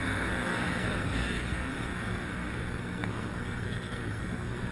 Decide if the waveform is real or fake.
fake